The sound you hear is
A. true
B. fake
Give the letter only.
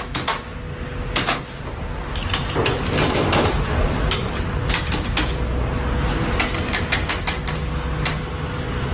A